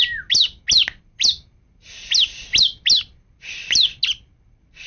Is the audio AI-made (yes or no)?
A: no